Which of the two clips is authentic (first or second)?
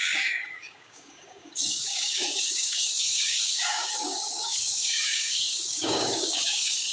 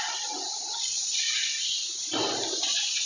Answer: second